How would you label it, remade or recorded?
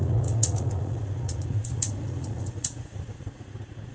remade